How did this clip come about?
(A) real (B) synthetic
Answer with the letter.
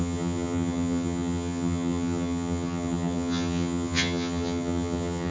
B